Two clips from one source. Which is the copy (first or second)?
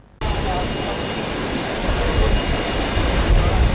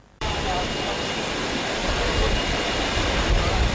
second